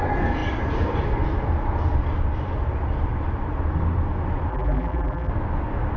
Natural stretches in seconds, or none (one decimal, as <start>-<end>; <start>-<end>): 0.0-4.5; 5.3-6.0